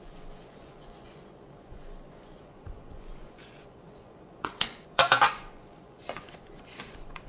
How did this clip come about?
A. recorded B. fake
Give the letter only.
B